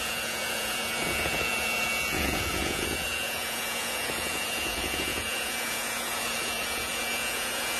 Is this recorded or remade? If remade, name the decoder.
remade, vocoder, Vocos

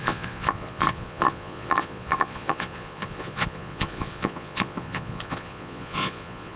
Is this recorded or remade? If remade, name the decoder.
remade, vocoder, Vocos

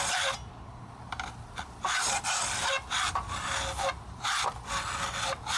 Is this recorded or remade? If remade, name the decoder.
recorded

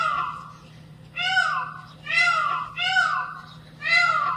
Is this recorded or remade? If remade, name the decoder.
recorded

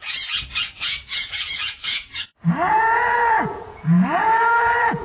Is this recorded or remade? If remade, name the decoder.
remade, vocoder, Vocos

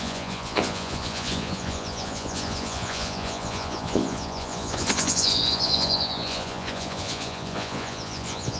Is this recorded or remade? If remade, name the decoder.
remade, vocoder, Vocos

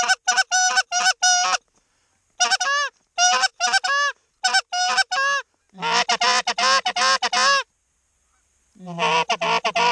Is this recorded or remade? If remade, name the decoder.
recorded